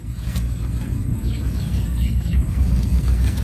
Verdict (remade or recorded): remade